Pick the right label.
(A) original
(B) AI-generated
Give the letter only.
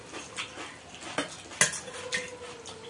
A